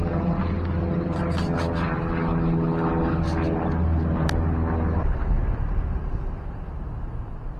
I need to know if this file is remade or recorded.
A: recorded